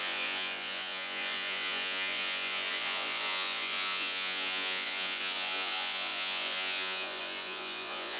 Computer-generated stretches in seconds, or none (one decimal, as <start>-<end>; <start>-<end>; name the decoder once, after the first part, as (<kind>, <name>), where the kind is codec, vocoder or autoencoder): 0.0-8.2 (vocoder, Vocos)